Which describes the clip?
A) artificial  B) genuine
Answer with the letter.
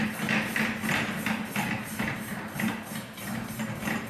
B